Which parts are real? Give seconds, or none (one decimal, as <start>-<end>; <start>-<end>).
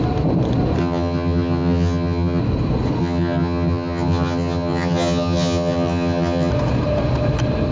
0.0-0.8; 2.4-3.0; 6.5-7.7